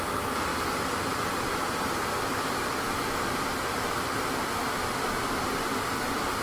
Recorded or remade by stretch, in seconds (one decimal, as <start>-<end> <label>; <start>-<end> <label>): 0.0-6.4 recorded